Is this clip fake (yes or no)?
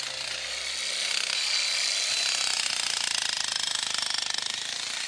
no